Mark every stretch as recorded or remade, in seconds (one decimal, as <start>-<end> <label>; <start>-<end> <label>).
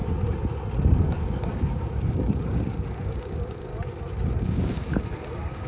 0.0-1.0 recorded; 1.0-3.7 remade; 3.7-4.4 recorded; 4.4-5.7 remade